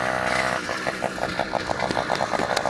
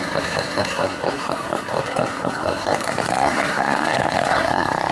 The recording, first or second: first